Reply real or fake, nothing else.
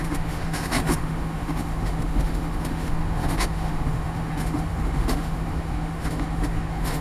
fake